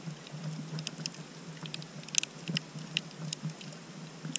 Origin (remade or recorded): recorded